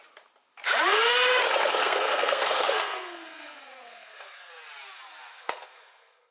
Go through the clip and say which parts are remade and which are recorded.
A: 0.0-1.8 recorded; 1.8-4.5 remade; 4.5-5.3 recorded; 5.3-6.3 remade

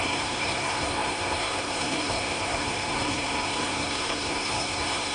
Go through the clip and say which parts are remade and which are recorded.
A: 0.0-5.1 remade

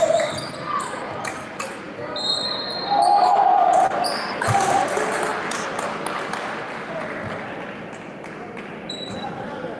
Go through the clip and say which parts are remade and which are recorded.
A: 0.0-9.8 recorded